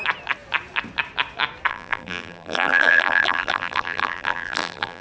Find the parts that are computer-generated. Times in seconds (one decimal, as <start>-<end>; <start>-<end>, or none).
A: 1.7-5.0